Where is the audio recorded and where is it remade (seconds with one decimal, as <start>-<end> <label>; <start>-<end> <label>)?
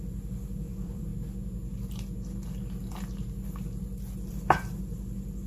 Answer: 0.0-1.1 remade; 1.1-4.3 recorded; 4.3-5.5 remade